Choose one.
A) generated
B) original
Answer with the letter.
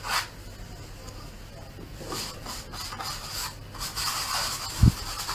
B